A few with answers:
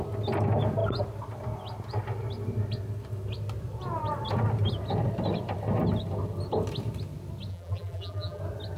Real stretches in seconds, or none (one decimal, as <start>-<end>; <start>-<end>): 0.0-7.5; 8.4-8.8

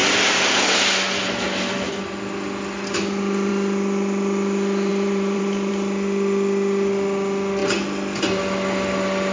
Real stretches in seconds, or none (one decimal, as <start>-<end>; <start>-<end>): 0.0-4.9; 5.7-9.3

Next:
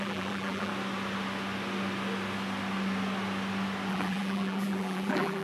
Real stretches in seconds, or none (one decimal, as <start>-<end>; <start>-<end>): 0.7-3.9

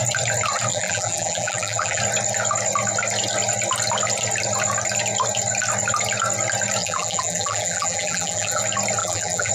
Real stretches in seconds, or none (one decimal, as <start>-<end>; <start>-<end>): 0.0-0.7; 2.0-6.8; 8.6-9.0

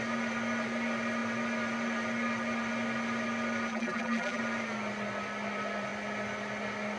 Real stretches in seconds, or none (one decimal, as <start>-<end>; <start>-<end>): 0.0-3.7; 4.4-7.0